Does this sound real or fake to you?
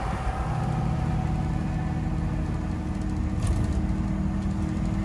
real